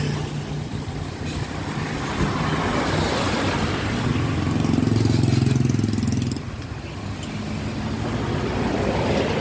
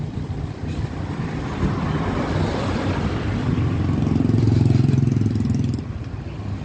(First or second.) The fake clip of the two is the second